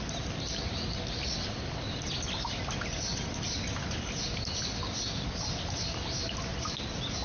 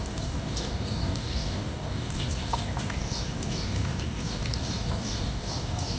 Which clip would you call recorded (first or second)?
first